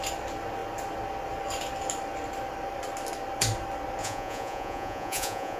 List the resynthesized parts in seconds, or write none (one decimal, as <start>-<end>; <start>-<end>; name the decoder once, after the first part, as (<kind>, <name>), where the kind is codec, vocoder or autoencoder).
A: 4.0-5.6 (vocoder, Vocos)

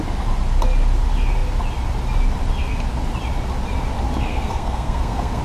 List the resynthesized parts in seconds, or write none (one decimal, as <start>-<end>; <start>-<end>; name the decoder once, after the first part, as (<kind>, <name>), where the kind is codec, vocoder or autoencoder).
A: 4.3-5.4 (codec, SNAC)

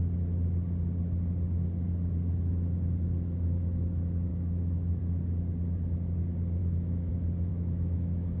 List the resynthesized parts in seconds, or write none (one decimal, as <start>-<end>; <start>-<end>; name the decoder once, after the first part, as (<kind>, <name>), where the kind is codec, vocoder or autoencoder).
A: 4.3-5.0 (autoencoder, DAC-VAE); 6.6-7.1; 7.5-8.4

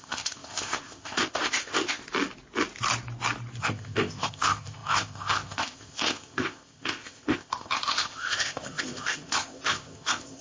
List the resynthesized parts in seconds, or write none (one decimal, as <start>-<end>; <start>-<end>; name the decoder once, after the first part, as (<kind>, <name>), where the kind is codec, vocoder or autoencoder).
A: 0.0-2.0 (codec, ZipCodec); 3.6-10.4

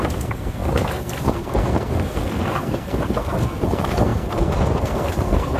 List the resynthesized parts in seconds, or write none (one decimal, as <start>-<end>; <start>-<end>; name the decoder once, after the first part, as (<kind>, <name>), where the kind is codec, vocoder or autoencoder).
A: 0.0-5.6 (codec, SNAC)

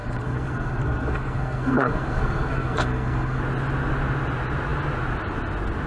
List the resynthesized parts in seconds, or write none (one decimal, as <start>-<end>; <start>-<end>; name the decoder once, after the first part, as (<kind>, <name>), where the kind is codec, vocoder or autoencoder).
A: 0.0-3.4 (codec, SNAC)